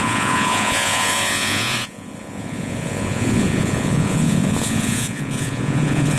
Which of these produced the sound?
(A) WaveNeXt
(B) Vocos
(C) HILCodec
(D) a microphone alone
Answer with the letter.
B